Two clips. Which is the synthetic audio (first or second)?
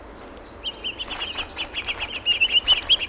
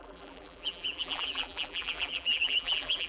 second